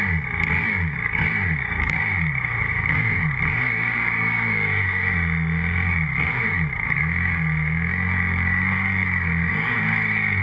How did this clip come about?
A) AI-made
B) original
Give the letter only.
A